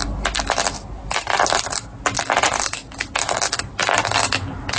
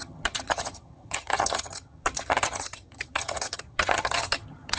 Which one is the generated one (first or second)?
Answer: second